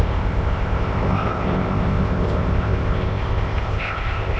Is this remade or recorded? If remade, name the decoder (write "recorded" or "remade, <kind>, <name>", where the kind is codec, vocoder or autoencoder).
remade, codec, ZipCodec